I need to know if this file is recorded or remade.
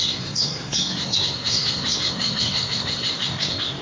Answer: remade